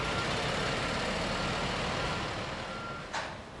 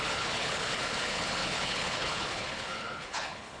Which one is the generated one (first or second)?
second